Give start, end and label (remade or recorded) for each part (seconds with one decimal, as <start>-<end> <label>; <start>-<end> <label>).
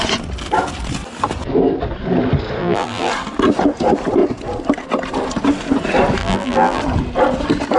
0.0-2.6 recorded; 2.6-3.1 remade; 3.1-6.2 recorded; 6.2-6.8 remade; 6.8-7.8 recorded